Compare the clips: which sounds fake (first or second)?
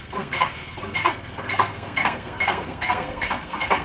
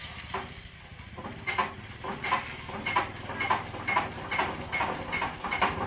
first